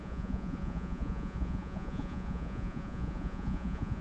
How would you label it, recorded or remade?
remade